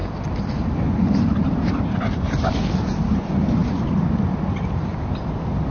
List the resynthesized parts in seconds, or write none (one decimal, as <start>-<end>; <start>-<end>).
none